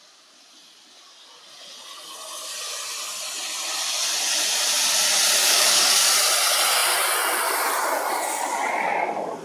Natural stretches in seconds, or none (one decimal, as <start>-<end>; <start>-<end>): 0.0-5.4; 6.1-9.4